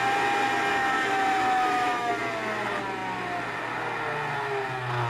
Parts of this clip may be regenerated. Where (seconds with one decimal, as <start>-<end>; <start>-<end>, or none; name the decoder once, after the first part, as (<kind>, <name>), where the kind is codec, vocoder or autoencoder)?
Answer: 0.7-2.1 (autoencoder, DAC-VAE)